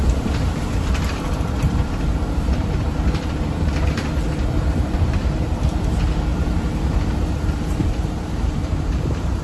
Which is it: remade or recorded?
remade